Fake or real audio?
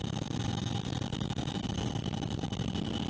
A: real